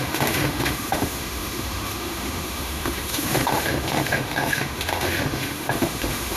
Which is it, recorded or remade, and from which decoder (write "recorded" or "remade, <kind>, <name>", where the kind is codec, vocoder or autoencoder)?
remade, autoencoder, DAC-VAE